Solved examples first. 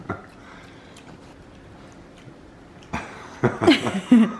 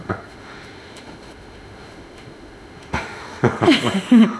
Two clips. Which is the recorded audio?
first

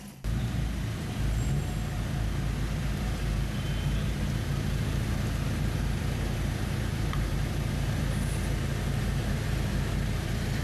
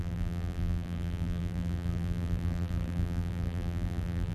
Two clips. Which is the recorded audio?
first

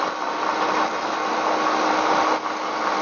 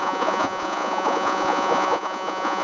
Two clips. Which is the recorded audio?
first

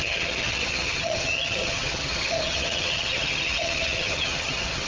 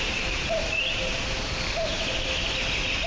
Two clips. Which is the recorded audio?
second